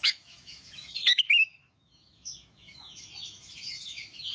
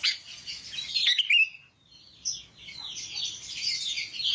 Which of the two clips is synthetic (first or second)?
first